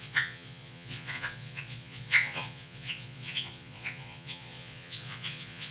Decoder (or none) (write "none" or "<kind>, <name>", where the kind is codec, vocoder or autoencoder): vocoder, Vocos